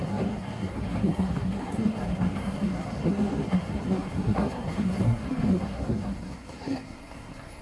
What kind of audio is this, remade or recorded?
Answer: remade